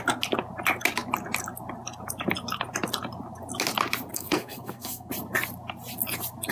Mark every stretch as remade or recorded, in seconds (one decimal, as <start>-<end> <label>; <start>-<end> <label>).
0.0-4.1 recorded; 4.1-5.1 remade; 5.1-6.5 recorded